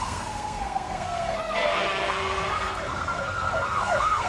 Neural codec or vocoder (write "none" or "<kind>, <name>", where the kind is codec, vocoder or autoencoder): codec, SNAC